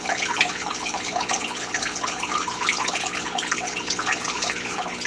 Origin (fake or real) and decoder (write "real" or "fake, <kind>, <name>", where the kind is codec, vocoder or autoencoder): fake, codec, HILCodec